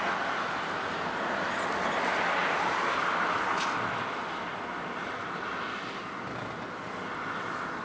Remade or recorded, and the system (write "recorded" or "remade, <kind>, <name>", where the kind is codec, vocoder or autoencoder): recorded